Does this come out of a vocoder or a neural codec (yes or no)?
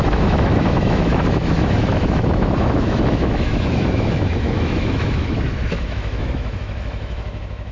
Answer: yes